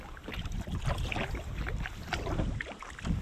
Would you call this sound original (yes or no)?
yes